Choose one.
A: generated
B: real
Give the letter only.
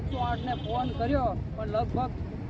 B